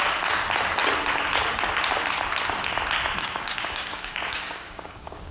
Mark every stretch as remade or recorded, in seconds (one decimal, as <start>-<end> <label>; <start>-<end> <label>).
0.0-3.2 recorded; 3.2-5.3 remade